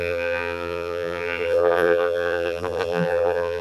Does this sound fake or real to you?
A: fake